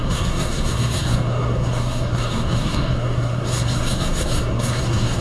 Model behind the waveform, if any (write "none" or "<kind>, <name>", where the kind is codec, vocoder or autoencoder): codec, SNAC